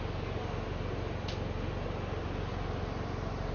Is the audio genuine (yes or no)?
yes